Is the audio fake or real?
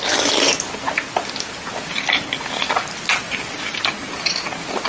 real